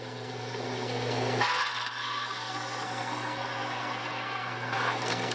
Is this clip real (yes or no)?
no